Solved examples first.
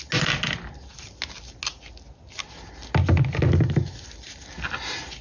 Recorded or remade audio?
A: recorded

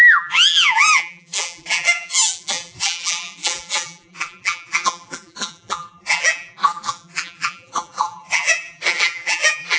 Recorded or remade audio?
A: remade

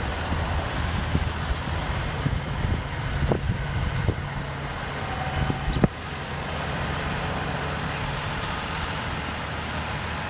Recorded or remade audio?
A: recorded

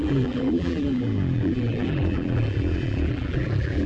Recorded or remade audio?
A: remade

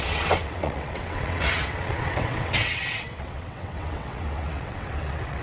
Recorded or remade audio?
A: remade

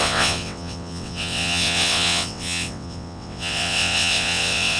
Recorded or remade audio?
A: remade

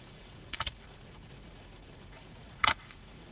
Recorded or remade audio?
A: remade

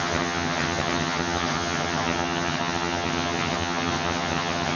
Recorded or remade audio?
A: remade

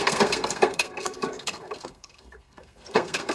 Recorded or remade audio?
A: remade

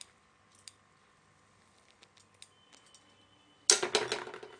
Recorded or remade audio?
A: recorded